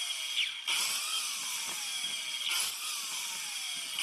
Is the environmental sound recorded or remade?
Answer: recorded